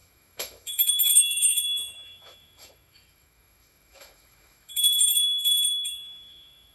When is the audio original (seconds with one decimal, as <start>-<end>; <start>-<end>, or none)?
none

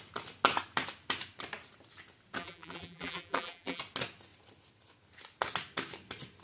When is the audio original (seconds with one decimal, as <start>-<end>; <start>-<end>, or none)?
0.0-2.4; 3.8-6.4

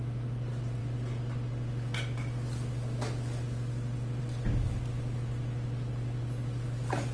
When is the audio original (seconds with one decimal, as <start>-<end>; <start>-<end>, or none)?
0.0-7.1